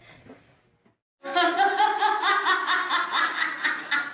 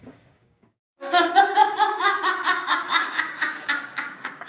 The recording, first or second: first